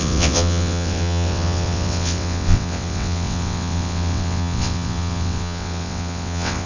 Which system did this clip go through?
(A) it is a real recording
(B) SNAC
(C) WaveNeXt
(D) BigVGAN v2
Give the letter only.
C